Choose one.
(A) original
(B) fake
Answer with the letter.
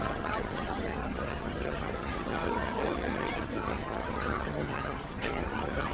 B